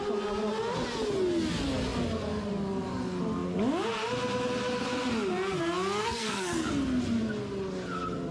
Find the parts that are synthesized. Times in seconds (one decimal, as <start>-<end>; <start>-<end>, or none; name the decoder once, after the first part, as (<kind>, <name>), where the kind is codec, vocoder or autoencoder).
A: 6.0-6.7 (codec, SNAC)